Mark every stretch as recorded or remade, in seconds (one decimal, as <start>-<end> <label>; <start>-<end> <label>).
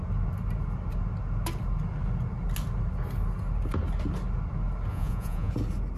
0.0-4.9 recorded; 4.9-5.5 remade; 5.5-6.0 recorded